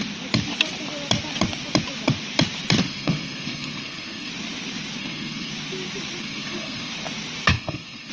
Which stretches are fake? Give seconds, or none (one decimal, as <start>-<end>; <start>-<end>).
2.8-4.3; 5.0-5.5; 6.2-6.9; 7.5-8.1